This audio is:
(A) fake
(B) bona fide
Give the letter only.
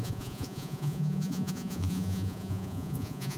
A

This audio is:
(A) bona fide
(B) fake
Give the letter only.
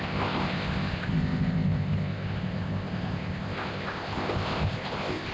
B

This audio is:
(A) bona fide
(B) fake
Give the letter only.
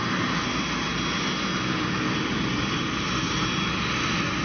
A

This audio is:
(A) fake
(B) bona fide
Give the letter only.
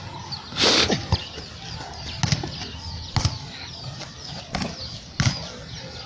B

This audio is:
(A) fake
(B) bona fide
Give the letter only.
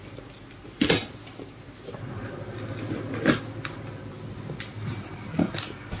B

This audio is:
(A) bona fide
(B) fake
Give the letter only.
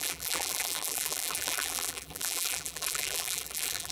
B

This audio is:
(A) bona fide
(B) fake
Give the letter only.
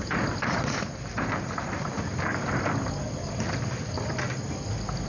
A